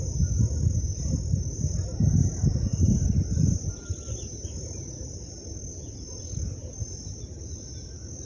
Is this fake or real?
real